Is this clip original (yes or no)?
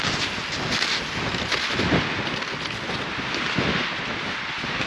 yes